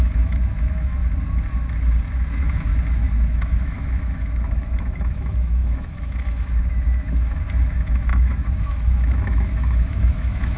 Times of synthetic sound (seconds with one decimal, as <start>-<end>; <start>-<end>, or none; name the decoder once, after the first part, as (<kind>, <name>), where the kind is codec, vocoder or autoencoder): 0.0-1.0 (autoencoder, DAC-VAE); 2.3-2.7; 3.3-10.6